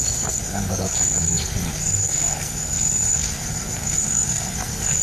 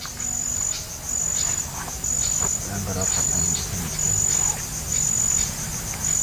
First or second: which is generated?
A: first